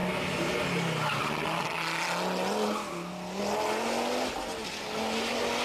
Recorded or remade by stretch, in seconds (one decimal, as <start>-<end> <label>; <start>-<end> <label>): 0.0-5.6 recorded